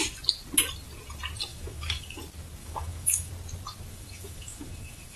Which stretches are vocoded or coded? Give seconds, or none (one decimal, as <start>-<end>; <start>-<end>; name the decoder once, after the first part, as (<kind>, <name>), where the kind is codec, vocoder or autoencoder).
1.5-2.2 (autoencoder, DAC-VAE); 2.6-3.3; 3.9-5.2